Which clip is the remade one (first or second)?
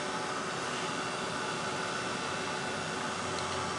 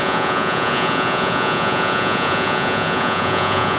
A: second